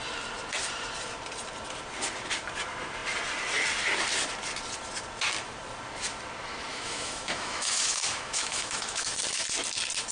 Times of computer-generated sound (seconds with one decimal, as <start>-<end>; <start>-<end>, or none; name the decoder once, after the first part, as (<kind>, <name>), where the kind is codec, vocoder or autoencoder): 6.7-9.1 (autoencoder, DAC-VAE)